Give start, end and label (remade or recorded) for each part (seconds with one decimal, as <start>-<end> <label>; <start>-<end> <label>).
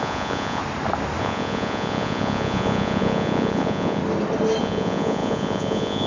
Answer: 0.0-0.6 remade; 0.6-1.2 recorded; 1.2-4.0 remade; 4.0-4.6 recorded; 4.6-6.1 remade